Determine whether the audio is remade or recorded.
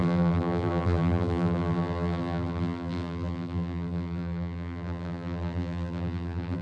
remade